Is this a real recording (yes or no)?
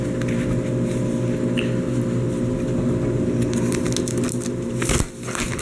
yes